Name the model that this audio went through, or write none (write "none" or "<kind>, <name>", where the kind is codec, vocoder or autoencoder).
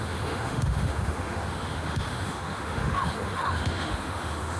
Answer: autoencoder, DAC-VAE